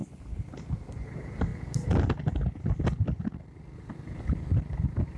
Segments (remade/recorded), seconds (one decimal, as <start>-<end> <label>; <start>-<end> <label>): 0.0-0.7 recorded; 0.7-1.5 remade; 1.5-4.2 recorded; 4.2-5.2 remade